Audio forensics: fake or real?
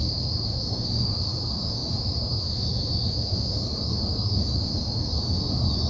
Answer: fake